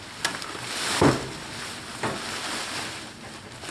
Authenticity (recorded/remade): recorded